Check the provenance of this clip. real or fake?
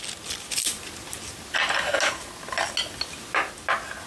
real